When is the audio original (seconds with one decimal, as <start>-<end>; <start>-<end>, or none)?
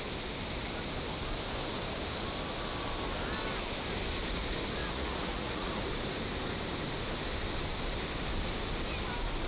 0.0-4.8; 5.7-9.5